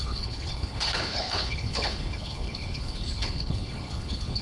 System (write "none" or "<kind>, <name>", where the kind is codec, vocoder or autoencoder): codec, HILCodec